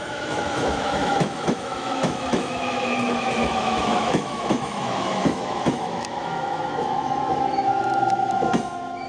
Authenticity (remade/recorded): remade